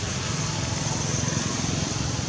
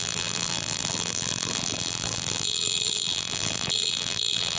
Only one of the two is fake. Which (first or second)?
second